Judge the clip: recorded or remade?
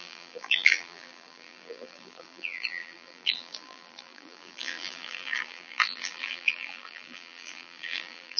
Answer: remade